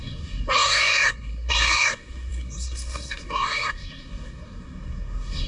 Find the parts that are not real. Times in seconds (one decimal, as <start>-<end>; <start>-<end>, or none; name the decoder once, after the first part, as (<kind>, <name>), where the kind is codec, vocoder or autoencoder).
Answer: 0.0-5.5 (codec, SNAC)